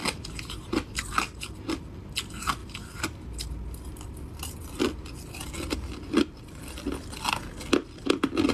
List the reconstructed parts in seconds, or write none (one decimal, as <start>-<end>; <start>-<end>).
0.0-1.1

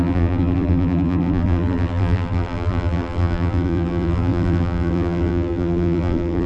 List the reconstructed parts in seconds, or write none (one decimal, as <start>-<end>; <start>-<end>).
0.0-6.5

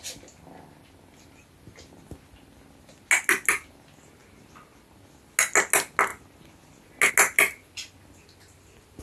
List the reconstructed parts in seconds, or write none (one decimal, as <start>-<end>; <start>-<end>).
none

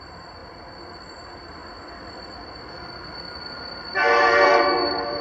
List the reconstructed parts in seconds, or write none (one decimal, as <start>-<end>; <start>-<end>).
0.0-0.4; 1.1-1.6; 3.6-5.2

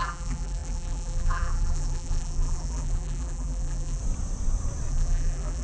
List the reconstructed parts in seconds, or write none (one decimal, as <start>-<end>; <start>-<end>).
0.0-4.0; 4.9-5.6